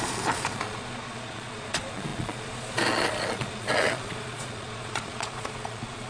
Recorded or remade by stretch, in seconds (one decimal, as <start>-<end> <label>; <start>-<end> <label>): 0.0-6.1 remade